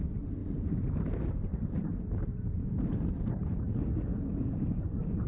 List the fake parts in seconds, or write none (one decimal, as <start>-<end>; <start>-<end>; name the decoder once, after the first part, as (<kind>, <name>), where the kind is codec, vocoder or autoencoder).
0.4-3.6 (vocoder, BigVGAN v2); 4.1-5.3